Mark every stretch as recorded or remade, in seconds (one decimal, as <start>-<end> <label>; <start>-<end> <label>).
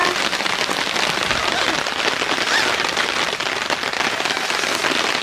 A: 0.0-5.2 recorded